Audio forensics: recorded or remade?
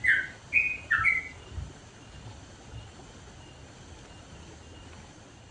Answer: recorded